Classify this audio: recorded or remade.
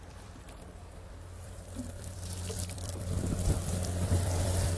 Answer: remade